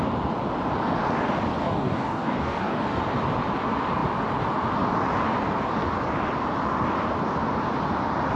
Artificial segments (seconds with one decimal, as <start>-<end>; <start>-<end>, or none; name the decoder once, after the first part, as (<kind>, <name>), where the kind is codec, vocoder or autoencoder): 1.6-3.0 (codec, DAC)